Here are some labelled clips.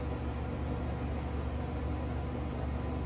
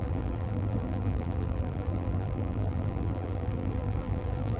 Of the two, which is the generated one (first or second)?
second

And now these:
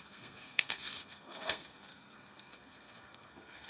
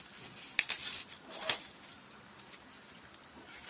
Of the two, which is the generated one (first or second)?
first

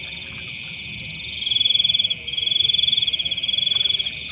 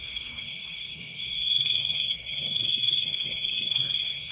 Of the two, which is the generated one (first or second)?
second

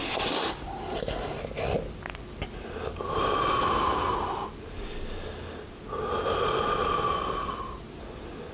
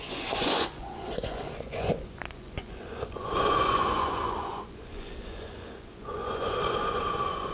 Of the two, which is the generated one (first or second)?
second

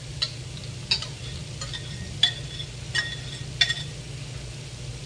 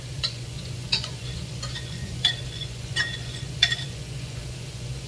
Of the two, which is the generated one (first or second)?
second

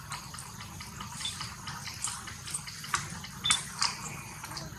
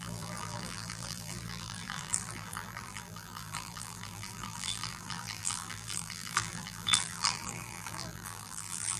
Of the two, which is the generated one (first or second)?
second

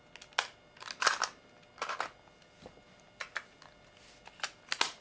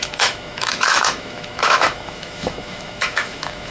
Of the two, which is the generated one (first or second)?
second